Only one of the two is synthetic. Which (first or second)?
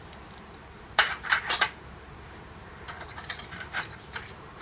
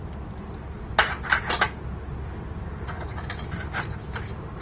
first